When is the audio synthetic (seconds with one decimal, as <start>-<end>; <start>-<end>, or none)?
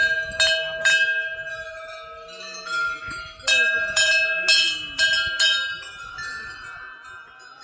none